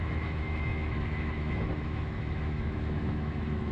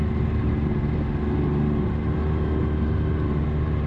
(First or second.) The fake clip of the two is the first